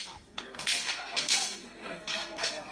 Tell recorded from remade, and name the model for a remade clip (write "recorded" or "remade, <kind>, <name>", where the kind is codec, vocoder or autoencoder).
remade, codec, SNAC